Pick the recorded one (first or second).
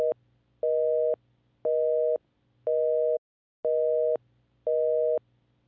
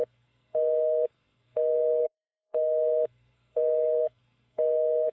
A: first